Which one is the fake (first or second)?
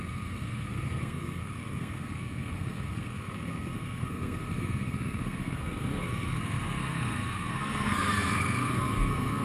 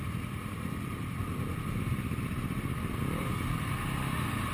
first